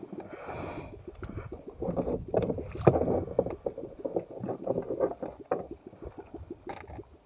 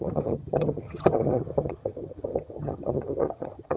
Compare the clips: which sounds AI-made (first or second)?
second